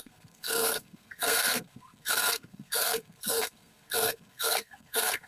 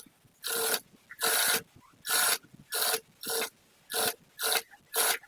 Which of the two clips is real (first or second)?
second